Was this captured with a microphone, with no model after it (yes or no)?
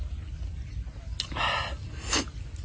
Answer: yes